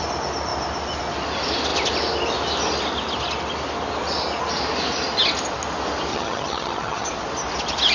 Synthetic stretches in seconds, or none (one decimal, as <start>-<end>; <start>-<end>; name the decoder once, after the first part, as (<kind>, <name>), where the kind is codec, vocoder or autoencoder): 6.1-7.1 (vocoder, HiFi-GAN)

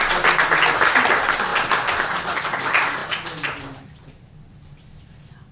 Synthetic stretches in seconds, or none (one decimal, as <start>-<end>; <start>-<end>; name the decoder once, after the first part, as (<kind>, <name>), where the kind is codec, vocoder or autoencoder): none

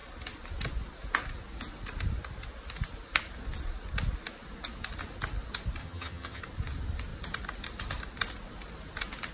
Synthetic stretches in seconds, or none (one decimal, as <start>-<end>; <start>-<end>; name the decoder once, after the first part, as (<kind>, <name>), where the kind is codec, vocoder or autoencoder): 5.8-6.4 (vocoder, HiFi-GAN)

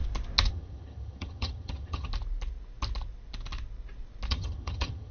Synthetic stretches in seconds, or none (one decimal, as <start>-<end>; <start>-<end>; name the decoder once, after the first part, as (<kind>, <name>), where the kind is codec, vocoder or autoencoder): 0.5-2.1 (vocoder, HiFi-GAN); 4.3-5.1

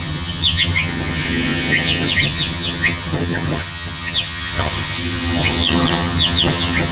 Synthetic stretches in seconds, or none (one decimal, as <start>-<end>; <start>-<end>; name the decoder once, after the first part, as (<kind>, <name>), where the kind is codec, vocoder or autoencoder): 0.0-6.9 (vocoder, HiFi-GAN)

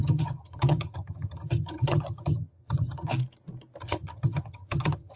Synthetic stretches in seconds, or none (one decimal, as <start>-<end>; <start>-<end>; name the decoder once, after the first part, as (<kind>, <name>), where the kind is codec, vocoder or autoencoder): 0.0-3.1 (vocoder, HiFi-GAN); 3.8-5.2